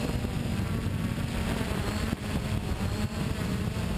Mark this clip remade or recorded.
remade